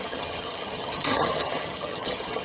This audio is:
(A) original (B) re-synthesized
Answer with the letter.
B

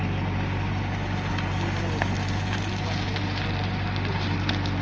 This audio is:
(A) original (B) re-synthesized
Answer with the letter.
A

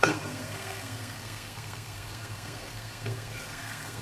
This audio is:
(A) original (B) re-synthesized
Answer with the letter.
B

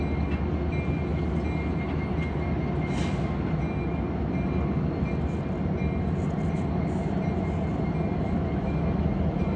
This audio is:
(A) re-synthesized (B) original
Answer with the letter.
B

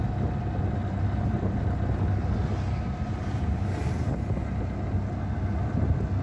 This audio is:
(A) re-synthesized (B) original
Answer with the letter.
B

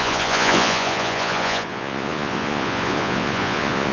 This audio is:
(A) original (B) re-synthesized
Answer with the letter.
B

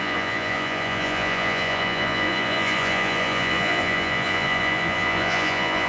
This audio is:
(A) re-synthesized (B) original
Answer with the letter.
A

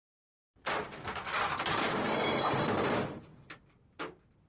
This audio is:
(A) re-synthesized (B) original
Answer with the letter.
B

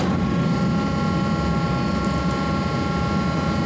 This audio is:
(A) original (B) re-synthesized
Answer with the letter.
A